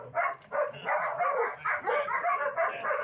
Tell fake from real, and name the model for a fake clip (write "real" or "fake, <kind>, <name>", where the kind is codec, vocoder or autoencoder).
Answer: real